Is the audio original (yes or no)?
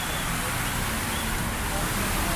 yes